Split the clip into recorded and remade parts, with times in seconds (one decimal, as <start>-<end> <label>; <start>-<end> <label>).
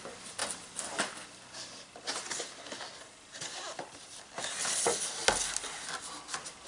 0.0-6.7 recorded